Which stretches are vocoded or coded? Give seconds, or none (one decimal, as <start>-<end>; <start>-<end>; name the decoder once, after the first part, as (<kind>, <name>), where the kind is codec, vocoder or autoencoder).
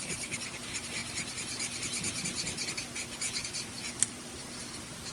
0.0-1.0 (vocoder, BigVGAN v2); 4.1-5.1